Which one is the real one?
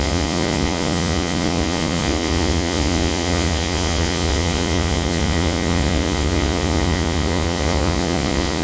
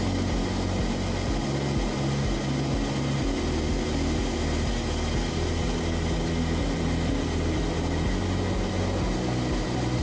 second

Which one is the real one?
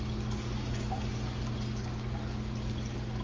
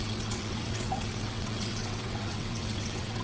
first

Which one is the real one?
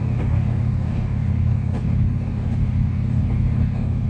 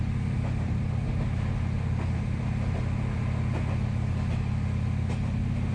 second